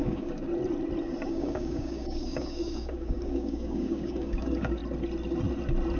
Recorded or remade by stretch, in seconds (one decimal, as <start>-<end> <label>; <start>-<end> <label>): 0.0-0.5 remade; 0.5-1.3 recorded; 1.3-4.8 remade; 4.8-6.0 recorded